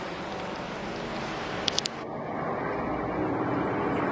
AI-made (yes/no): no